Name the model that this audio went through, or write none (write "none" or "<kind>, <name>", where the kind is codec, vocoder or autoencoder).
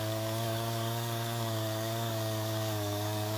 codec, DAC